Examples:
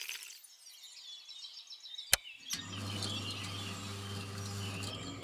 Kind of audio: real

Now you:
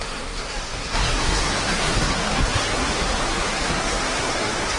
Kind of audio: fake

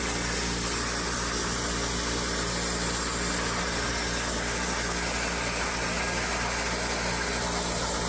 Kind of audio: real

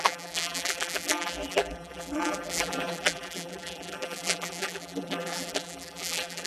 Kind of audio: fake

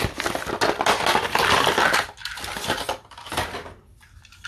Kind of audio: real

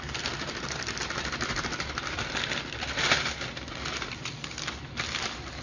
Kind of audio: fake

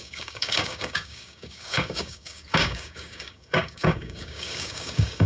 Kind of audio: fake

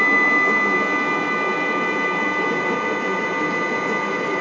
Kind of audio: real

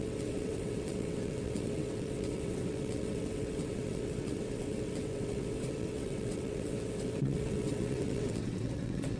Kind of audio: fake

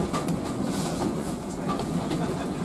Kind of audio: fake